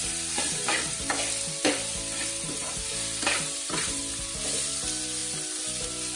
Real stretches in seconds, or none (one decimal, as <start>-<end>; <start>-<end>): 1.1-2.6; 4.0-6.2